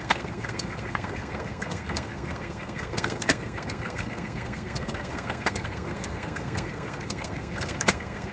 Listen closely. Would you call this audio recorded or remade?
remade